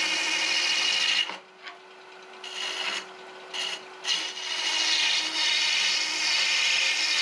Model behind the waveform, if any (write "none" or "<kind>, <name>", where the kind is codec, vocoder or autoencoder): none